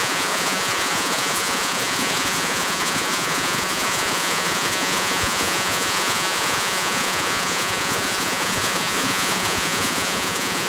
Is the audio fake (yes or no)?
yes